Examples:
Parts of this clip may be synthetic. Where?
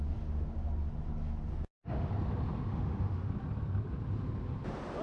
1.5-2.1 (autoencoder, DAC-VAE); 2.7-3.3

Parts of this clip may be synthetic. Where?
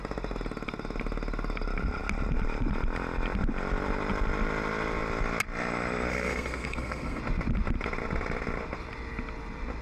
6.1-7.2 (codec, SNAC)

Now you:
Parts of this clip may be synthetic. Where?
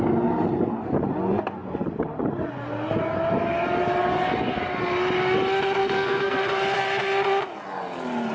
5.8-6.4 (codec, SNAC)